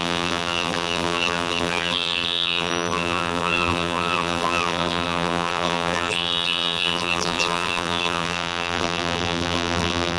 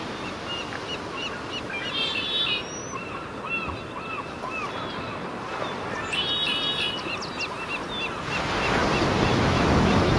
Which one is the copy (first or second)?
first